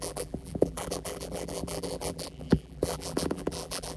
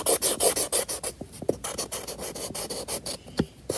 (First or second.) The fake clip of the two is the first